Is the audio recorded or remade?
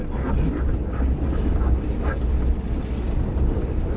recorded